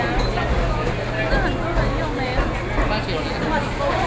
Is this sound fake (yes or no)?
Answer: no